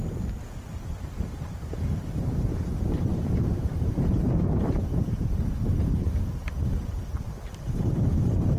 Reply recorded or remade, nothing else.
remade